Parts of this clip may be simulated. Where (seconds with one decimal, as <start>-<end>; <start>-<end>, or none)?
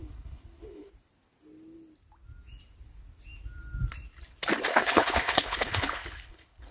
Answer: 0.0-0.9; 4.7-6.7